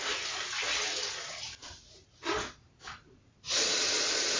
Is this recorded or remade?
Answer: recorded